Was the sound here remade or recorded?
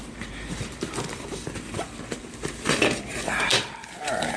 remade